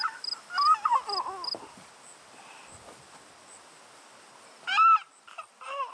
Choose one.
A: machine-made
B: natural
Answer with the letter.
B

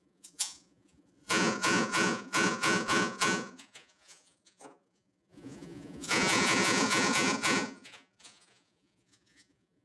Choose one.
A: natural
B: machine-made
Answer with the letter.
B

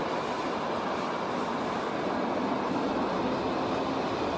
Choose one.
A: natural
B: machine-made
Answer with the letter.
A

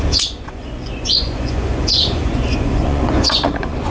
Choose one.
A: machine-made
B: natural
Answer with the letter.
A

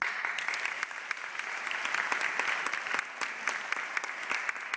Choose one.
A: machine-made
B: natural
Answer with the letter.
B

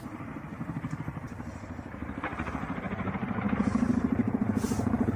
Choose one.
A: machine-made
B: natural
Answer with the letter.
A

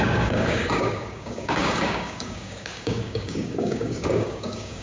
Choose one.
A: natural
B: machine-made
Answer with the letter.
B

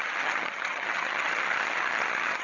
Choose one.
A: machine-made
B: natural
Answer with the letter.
A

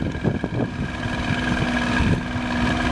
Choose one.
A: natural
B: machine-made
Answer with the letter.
A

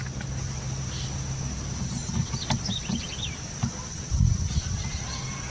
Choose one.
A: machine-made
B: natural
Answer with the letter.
B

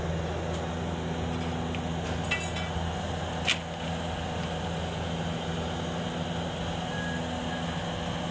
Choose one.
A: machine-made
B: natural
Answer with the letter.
B